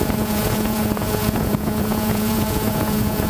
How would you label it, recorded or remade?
remade